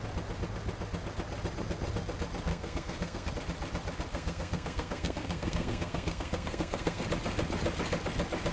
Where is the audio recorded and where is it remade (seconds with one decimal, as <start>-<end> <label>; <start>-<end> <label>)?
0.0-2.5 recorded; 2.5-3.3 remade; 3.3-4.1 recorded; 4.1-7.0 remade; 7.0-8.5 recorded